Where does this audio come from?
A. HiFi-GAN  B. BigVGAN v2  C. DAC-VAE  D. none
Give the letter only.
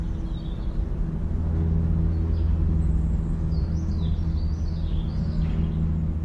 D